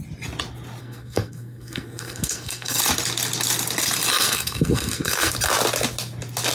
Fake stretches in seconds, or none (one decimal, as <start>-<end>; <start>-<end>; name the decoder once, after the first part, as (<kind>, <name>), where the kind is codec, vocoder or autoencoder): 0.8-2.8 (codec, SNAC); 4.1-5.3